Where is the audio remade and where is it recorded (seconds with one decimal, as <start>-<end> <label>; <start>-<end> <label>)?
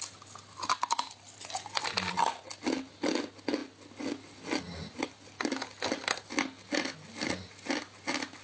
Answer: 0.0-8.4 recorded